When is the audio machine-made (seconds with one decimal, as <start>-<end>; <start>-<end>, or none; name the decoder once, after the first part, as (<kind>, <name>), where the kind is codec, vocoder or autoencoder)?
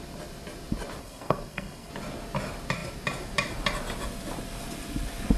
1.0-1.9 (codec, SNAC)